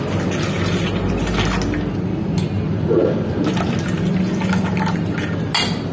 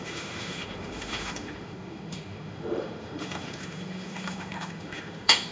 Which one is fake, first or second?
second